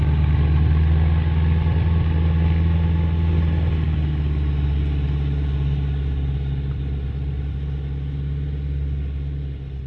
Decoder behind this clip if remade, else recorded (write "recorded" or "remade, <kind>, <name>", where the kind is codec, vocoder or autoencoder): recorded